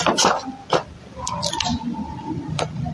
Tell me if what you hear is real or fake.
real